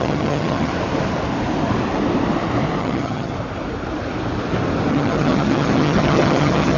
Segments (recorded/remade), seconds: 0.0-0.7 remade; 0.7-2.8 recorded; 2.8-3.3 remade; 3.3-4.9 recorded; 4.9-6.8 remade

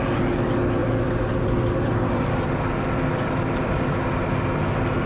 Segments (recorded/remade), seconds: 0.0-0.8 recorded; 0.8-3.9 remade; 3.9-5.1 recorded

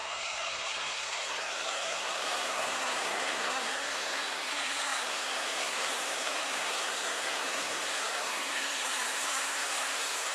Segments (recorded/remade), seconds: 0.0-10.3 remade

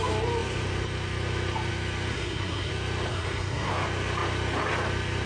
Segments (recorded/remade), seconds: 0.0-2.1 recorded; 2.1-2.7 remade; 2.7-3.1 recorded; 3.1-3.7 remade; 3.7-5.3 recorded

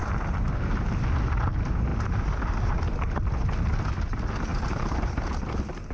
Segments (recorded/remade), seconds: 0.0-1.9 recorded; 1.9-2.7 remade; 2.7-4.5 recorded; 4.5-5.4 remade; 5.4-5.9 recorded

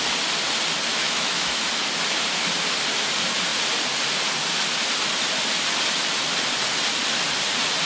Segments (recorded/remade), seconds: 0.0-0.9 recorded; 0.9-1.6 remade; 1.6-7.9 recorded

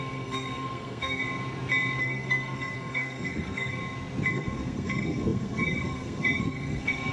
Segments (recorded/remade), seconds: 0.0-1.2 remade; 1.2-2.0 recorded; 2.0-3.8 remade; 3.8-4.3 recorded; 4.3-7.1 remade